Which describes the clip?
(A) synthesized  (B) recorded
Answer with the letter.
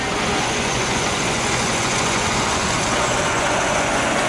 A